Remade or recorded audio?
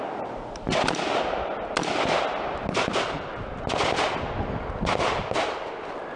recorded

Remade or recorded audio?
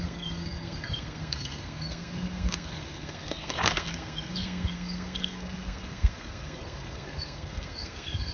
remade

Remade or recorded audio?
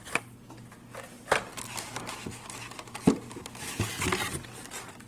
recorded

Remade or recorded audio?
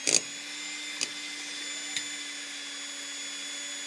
recorded